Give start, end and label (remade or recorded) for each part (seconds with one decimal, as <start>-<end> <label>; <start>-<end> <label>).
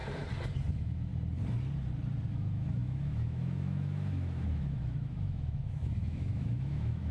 0.0-0.7 recorded; 0.7-1.1 remade; 1.1-2.3 recorded; 2.3-7.1 remade